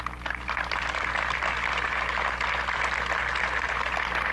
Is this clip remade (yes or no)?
no